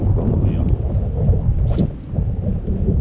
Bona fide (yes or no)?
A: yes